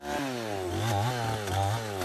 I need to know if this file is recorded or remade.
recorded